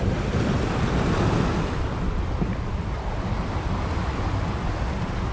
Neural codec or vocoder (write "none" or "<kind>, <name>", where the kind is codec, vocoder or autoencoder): none